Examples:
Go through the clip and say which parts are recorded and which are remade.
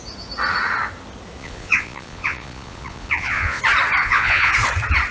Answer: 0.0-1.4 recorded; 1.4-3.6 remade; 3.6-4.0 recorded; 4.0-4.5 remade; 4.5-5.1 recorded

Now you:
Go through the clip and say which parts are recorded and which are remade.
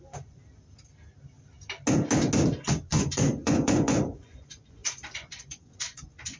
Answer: 0.0-0.4 remade; 0.4-2.5 recorded; 2.5-6.4 remade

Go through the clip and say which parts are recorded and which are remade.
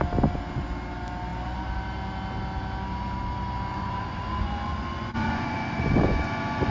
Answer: 0.0-3.7 recorded; 3.7-6.7 remade